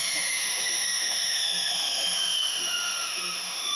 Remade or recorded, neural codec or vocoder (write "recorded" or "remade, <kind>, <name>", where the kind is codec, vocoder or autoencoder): remade, autoencoder, DAC-VAE